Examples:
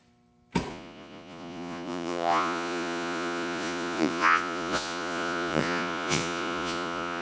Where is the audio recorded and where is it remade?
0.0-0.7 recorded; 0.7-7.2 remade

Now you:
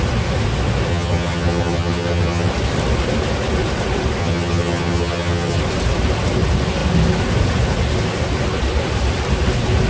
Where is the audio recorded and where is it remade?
0.0-0.9 recorded; 0.9-2.5 remade; 2.5-4.2 recorded; 4.2-5.6 remade; 5.6-9.9 recorded

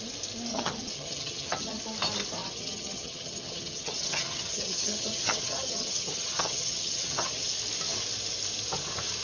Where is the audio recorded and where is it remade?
0.0-0.5 recorded; 0.5-1.8 remade; 1.8-2.4 recorded; 2.4-7.4 remade; 7.4-9.2 recorded

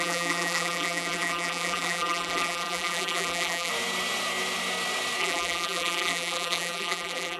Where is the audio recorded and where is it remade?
0.0-3.7 remade; 3.7-5.2 recorded; 5.2-7.4 remade

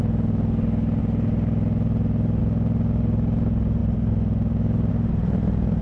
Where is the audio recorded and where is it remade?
0.0-1.0 recorded; 1.0-2.4 remade; 2.4-3.8 recorded; 3.8-4.9 remade; 4.9-5.8 recorded

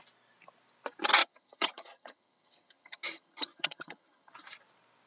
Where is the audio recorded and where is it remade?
0.0-1.2 recorded; 1.2-4.3 remade; 4.3-5.1 recorded

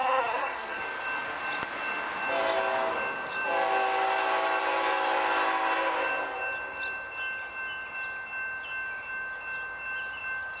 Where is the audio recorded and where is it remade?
0.0-0.8 remade; 0.8-10.6 recorded